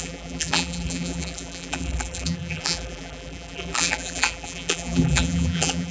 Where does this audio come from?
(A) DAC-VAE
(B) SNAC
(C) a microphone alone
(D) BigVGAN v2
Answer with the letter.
D